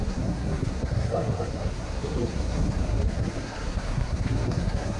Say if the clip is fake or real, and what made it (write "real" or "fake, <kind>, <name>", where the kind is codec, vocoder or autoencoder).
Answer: fake, codec, SNAC